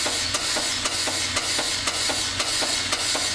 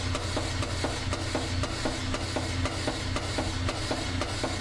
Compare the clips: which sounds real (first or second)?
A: second